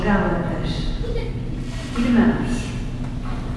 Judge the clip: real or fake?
real